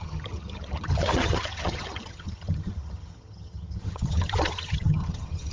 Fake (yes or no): yes